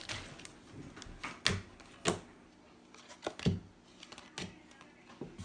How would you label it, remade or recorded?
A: recorded